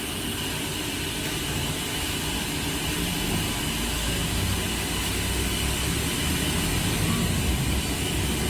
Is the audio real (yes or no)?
yes